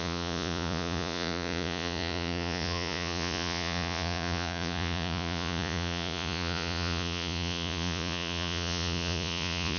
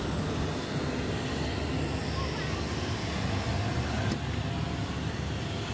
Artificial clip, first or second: first